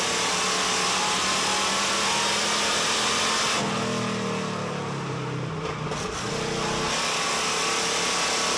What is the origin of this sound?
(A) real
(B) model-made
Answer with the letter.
A